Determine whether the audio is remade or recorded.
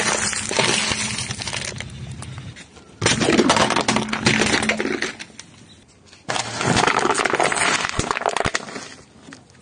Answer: recorded